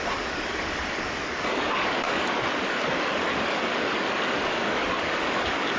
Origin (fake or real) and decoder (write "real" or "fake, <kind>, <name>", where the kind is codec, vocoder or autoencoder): fake, codec, DAC